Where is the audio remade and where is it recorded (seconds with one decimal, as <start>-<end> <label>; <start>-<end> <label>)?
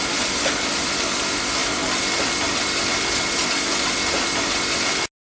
0.0-5.3 recorded